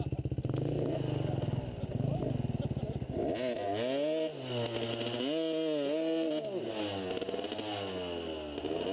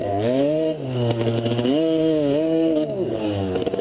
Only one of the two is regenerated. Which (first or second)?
second